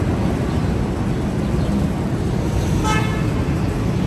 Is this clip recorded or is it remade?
recorded